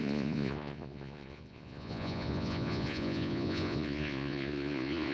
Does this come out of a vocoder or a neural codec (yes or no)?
yes